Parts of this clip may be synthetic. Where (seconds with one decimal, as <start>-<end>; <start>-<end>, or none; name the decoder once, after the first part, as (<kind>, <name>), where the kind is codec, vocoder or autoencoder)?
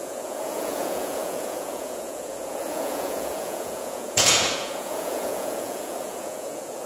0.0-6.9 (vocoder, Vocos)